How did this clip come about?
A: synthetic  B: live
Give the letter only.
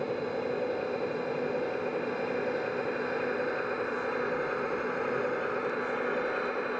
B